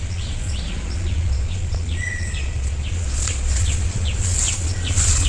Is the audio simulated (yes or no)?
yes